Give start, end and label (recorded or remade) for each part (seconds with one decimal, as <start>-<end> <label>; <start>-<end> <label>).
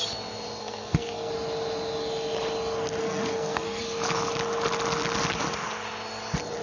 0.0-0.6 recorded; 0.6-1.3 remade; 1.3-3.0 recorded; 3.0-3.8 remade; 3.8-6.6 recorded